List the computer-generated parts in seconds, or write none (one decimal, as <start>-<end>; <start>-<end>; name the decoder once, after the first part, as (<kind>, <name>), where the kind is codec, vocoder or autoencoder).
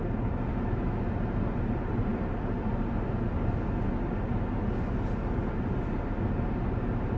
0.5-1.0 (autoencoder, DAC-VAE)